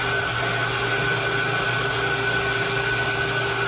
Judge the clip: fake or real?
real